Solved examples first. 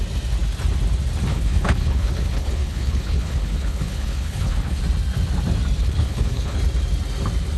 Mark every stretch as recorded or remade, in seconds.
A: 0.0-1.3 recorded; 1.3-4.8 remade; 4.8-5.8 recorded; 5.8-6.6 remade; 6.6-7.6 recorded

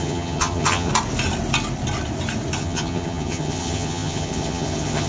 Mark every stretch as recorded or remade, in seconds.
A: 0.0-0.9 remade; 0.9-2.6 recorded; 2.6-5.1 remade